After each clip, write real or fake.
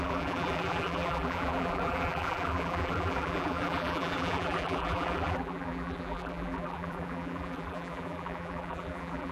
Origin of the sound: fake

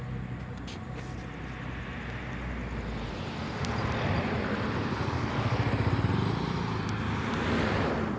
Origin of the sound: fake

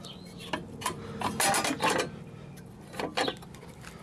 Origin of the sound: real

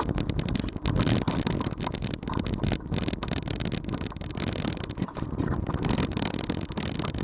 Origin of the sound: real